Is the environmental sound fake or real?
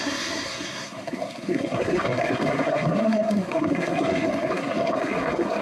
fake